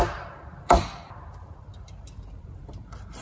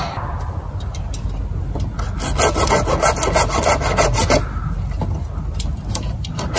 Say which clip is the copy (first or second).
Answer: first